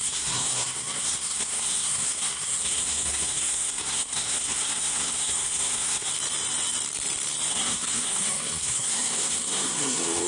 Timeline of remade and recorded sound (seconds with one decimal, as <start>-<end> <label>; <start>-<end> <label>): 0.0-6.1 remade; 6.1-7.5 recorded; 7.5-10.3 remade